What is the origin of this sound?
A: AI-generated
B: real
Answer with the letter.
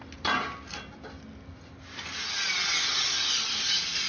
B